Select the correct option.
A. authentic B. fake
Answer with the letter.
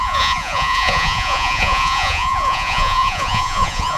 B